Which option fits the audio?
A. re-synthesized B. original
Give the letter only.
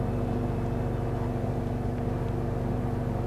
B